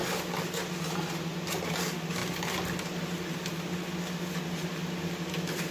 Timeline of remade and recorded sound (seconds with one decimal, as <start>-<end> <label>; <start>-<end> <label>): 0.0-5.7 recorded